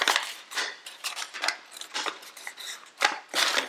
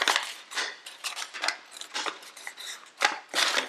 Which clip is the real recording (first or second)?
second